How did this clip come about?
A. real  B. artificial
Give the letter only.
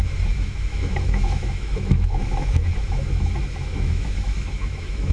B